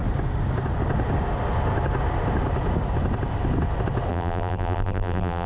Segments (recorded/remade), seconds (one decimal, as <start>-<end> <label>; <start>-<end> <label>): 0.0-4.1 recorded; 4.1-5.5 remade